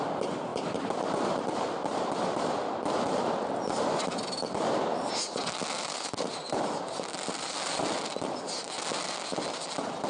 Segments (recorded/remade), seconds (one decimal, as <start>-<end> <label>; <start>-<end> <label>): 0.0-10.1 recorded